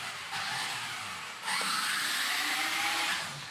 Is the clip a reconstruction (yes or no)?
no